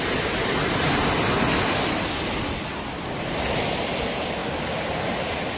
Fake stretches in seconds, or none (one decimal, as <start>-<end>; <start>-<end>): none